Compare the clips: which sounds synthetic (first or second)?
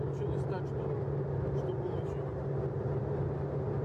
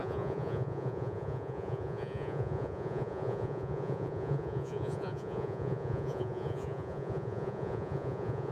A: second